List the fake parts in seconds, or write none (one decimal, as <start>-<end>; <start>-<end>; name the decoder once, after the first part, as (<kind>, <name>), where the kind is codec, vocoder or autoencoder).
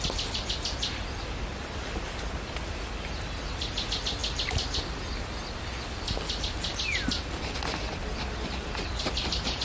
none